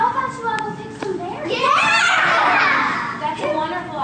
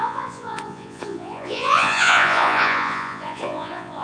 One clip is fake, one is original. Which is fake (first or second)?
second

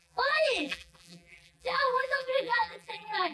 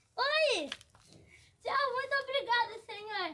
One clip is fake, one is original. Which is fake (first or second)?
first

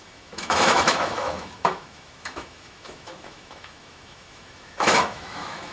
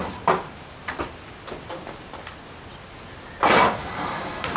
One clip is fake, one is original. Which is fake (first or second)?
first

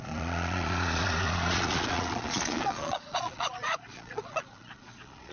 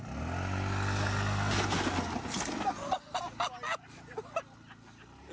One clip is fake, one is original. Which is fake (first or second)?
first